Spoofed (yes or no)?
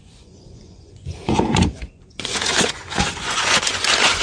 yes